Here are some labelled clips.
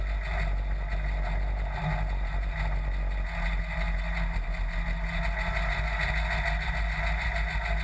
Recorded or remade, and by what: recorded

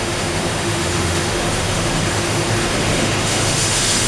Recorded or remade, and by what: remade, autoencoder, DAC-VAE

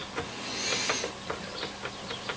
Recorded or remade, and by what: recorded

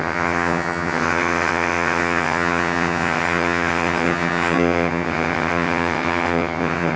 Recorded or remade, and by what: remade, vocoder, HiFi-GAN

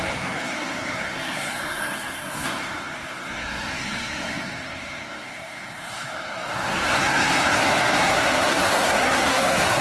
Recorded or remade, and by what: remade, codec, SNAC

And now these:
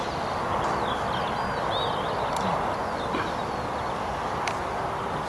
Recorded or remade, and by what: recorded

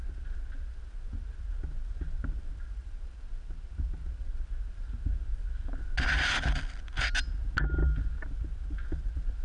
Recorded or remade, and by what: recorded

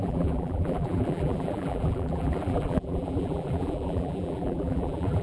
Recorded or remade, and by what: remade, vocoder, BigVGAN v2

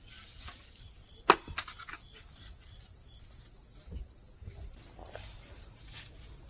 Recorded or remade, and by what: recorded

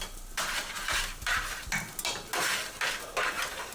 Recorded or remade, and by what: recorded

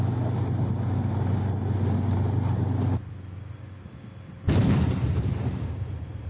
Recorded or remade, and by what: recorded